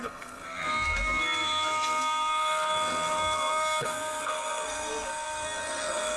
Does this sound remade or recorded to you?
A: remade